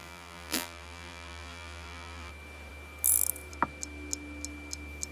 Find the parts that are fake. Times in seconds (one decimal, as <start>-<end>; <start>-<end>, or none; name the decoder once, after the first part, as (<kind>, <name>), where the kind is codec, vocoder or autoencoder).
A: 0.0-2.3 (vocoder, BigVGAN v2)